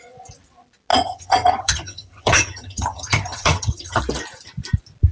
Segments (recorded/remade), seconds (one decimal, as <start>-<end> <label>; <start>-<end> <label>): 0.0-0.9 recorded; 0.9-4.0 remade; 4.0-5.1 recorded